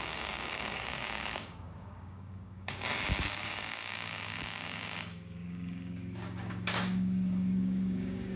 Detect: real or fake fake